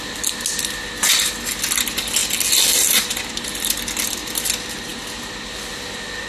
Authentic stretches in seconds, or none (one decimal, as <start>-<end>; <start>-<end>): 0.0-6.3